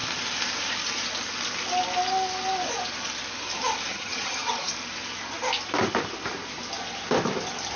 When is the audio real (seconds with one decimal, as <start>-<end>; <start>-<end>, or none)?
0.0-3.9; 4.7-7.8